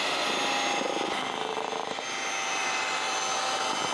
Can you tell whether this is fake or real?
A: real